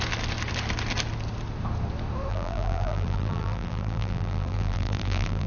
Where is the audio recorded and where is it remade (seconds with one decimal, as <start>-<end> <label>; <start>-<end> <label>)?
0.0-2.3 recorded; 2.3-5.5 remade